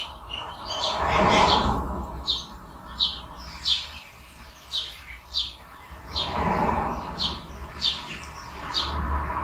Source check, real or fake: fake